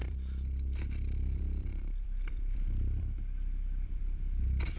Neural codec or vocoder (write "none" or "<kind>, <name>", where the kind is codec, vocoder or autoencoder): vocoder, BigVGAN v2